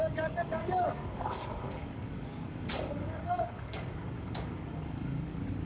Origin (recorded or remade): remade